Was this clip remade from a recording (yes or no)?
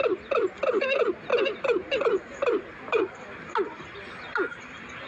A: no